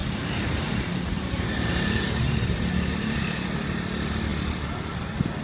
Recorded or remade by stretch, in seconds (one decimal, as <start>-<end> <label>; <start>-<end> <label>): 0.0-3.2 remade; 3.2-5.4 recorded